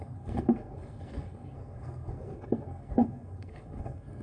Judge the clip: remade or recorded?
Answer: remade